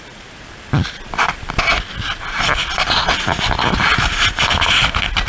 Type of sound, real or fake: real